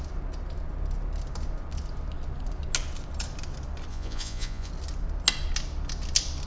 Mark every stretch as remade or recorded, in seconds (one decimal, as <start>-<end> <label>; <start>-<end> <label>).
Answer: 0.0-3.9 recorded; 3.9-4.7 remade; 4.7-6.5 recorded